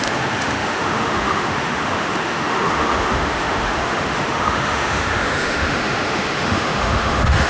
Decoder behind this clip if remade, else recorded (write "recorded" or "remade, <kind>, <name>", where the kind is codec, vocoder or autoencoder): remade, autoencoder, DAC-VAE